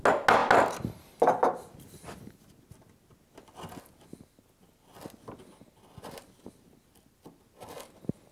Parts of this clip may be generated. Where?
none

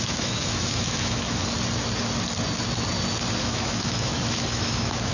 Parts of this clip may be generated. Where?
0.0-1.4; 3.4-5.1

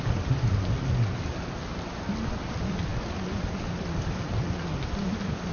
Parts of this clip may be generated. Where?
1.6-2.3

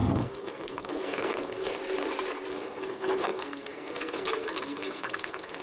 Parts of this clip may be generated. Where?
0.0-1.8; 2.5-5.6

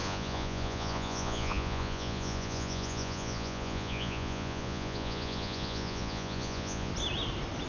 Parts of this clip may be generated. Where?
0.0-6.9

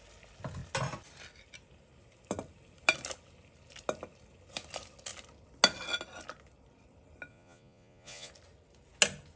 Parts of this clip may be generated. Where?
7.3-8.3

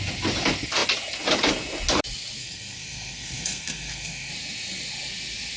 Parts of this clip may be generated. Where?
2.4-4.3

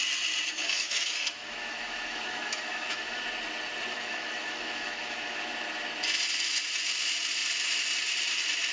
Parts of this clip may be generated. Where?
0.5-3.2; 3.9-5.4